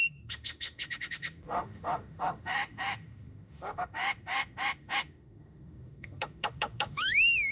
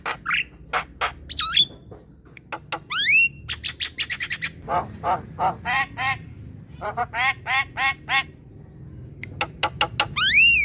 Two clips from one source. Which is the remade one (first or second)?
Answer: first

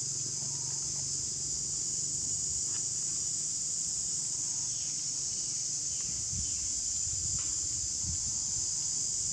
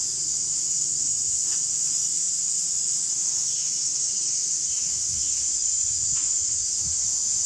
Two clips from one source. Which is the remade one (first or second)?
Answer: second